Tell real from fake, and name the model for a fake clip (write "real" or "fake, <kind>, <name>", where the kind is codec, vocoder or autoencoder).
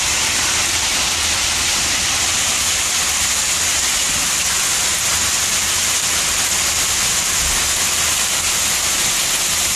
real